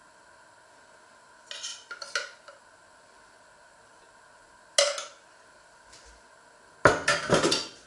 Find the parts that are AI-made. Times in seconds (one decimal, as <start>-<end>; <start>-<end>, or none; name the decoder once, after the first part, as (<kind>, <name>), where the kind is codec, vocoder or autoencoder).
none